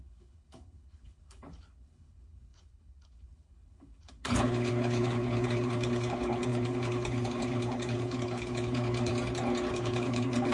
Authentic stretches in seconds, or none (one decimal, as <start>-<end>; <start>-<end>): 9.1-9.7

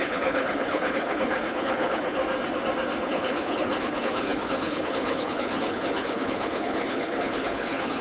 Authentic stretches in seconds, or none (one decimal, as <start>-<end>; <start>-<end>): 2.2-3.0

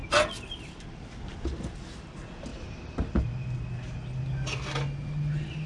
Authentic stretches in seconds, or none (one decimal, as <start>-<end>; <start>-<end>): 0.0-5.7

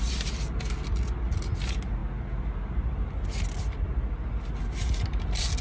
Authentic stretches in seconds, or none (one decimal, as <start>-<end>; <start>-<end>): 0.0-5.6